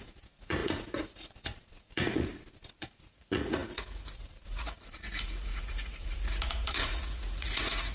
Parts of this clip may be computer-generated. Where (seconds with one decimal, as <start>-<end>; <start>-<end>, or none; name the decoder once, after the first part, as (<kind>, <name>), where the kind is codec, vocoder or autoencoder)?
0.0-2.3 (vocoder, Vocos); 2.8-7.9